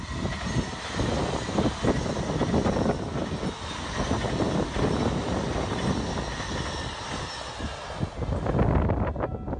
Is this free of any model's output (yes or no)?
yes